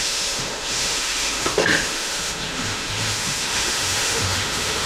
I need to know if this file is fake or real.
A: fake